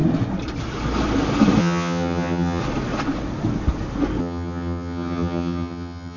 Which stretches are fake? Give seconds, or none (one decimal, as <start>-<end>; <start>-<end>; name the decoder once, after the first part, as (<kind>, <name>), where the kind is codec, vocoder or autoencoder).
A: 1.6-2.6 (vocoder, HiFi-GAN); 4.2-6.2